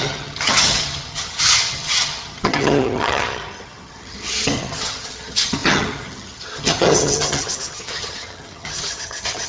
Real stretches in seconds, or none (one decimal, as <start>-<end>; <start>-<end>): none